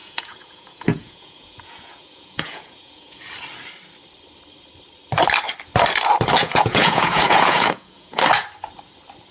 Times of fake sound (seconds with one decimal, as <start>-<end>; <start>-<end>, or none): 0.0-3.3; 6.4-8.2